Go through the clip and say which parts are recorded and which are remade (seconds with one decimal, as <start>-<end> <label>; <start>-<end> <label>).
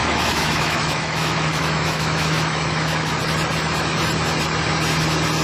0.0-3.2 remade; 3.2-5.4 recorded